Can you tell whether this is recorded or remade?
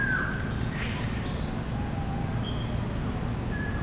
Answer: recorded